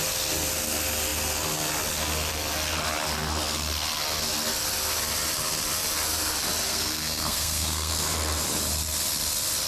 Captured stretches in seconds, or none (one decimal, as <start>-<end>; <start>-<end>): 0.0-6.7; 7.9-9.7

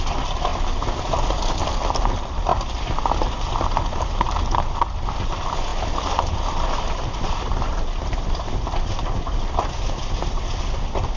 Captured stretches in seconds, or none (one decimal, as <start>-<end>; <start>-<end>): 0.0-0.5; 1.0-2.5; 3.5-5.7; 10.6-11.2

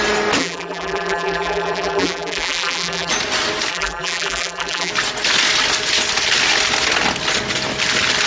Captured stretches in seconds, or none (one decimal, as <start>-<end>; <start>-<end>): 0.0-0.4; 3.1-3.7; 4.9-8.3

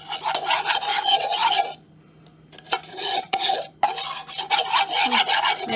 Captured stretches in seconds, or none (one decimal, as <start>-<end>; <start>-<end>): 0.0-0.9; 1.5-2.9; 3.6-5.8

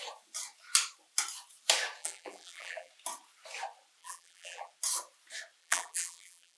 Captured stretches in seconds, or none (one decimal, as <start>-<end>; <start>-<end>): 0.0-2.0; 2.9-4.0; 4.7-5.6